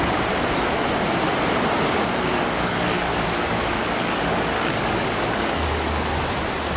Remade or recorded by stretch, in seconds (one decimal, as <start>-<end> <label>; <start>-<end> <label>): 0.0-2.3 recorded; 2.3-6.2 remade; 6.2-6.8 recorded